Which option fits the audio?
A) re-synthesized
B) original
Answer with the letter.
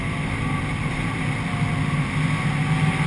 B